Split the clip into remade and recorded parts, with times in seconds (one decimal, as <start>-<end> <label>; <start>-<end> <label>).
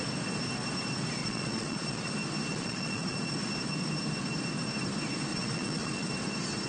0.0-1.2 recorded; 1.2-2.1 remade; 2.1-2.5 recorded; 2.5-3.2 remade; 3.2-5.3 recorded; 5.3-6.1 remade; 6.1-6.7 recorded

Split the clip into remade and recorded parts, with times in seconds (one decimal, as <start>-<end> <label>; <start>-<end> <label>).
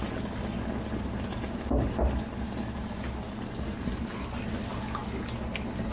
0.0-5.9 recorded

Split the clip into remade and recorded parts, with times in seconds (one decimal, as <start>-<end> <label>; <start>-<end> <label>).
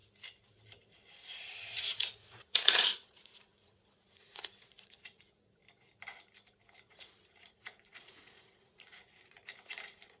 0.0-1.3 recorded; 1.3-5.6 remade; 5.6-6.9 recorded; 6.9-10.2 remade